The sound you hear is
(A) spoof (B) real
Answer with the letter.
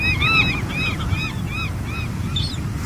B